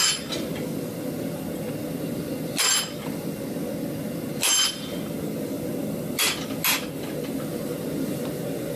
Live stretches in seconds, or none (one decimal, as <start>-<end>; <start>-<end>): 0.0-8.8